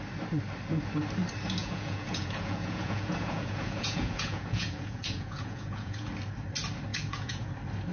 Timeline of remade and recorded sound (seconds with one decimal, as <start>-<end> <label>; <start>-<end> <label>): 0.0-1.6 recorded; 1.6-6.1 remade; 6.1-6.9 recorded; 6.9-7.5 remade; 7.5-7.9 recorded